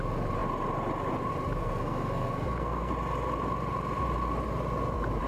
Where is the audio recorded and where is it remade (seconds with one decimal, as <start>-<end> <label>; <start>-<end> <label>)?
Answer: 0.0-1.6 recorded; 1.6-2.9 remade; 2.9-5.3 recorded